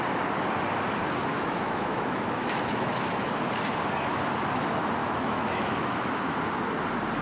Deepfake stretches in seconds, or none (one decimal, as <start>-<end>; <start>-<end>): 1.3-3.3; 5.0-6.4